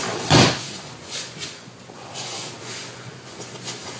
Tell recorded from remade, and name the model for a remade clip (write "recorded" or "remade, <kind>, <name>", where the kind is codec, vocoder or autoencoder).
remade, vocoder, Vocos